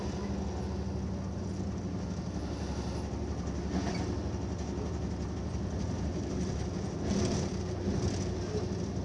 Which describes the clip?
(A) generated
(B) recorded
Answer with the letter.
B